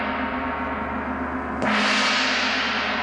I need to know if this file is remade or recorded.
recorded